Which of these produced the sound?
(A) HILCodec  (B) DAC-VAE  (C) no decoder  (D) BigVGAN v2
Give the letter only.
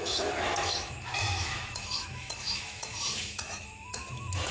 B